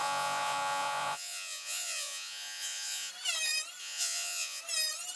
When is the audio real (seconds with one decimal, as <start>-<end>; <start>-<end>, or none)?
3.1-3.8; 4.6-5.2